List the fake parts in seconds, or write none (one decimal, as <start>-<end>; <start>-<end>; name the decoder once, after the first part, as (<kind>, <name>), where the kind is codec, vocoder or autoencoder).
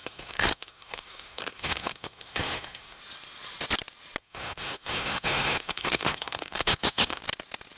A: 0.0-3.0 (codec, SNAC); 4.2-7.2